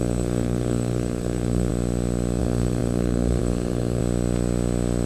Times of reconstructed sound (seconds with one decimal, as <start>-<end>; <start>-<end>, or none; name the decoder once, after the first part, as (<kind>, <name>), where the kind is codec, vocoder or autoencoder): 0.0-1.7 (codec, SNAC); 2.4-4.0